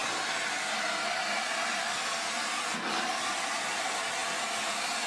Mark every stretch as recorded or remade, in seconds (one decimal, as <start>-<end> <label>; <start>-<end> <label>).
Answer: 0.0-5.1 recorded